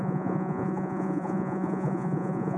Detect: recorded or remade remade